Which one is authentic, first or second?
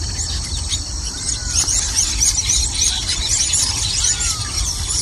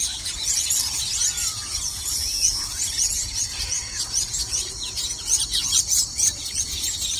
first